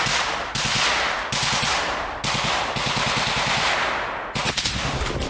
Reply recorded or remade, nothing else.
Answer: recorded